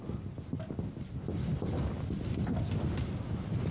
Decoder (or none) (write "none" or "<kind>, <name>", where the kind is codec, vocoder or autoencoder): none